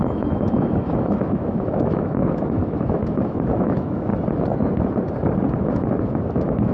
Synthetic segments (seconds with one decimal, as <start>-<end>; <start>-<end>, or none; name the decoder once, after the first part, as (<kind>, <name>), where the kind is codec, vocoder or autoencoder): 0.0-4.1 (autoencoder, DAC-VAE); 5.5-6.7